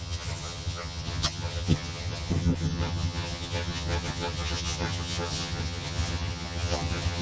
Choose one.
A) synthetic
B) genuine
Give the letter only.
A